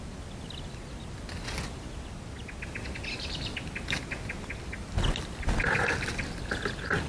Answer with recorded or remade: recorded